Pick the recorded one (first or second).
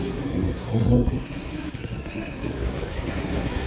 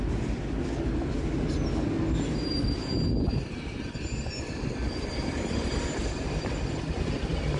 second